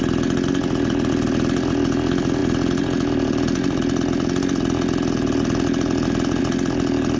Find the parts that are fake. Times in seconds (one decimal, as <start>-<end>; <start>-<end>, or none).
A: none